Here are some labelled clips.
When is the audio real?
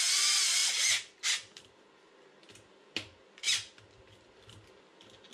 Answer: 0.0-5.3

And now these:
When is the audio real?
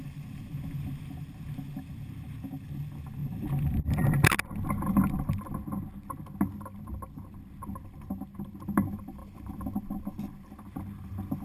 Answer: 0.0-11.4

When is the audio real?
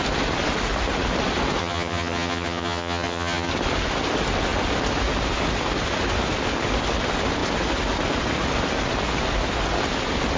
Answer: 0.0-1.6; 3.5-10.4